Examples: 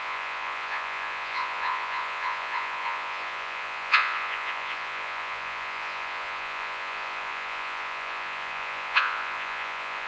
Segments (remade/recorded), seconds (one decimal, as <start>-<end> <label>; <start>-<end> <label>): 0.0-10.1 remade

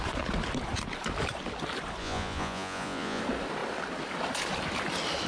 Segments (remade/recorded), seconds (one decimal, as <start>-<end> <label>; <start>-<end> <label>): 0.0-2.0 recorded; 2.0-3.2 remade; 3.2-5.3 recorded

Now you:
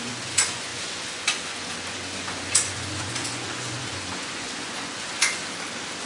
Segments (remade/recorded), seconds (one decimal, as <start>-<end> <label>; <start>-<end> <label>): 0.0-5.4 remade; 5.4-6.1 recorded

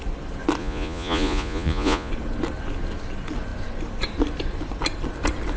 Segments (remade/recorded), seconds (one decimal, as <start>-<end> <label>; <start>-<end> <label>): 0.0-0.6 recorded; 0.6-2.1 remade; 2.1-5.6 recorded